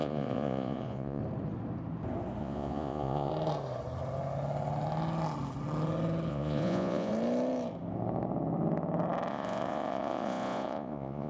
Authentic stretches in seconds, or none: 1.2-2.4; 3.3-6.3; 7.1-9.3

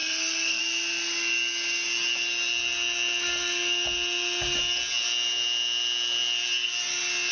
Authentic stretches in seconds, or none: 0.6-7.3

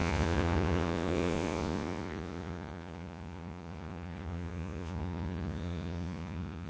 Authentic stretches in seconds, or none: none

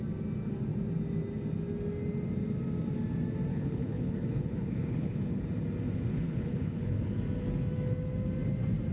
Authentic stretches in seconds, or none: 0.0-3.5; 5.4-6.1; 7.2-8.9

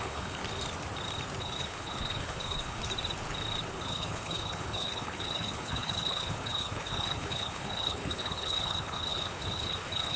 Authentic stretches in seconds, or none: 0.4-1.4; 2.8-3.7

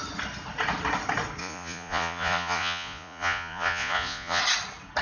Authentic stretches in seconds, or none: 0.0-1.4; 4.4-5.0

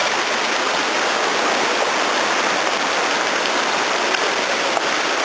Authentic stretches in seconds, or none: 0.0-5.2

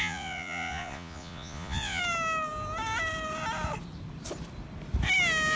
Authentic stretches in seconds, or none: 2.0-5.6